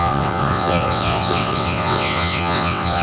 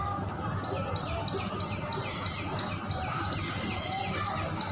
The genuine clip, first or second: second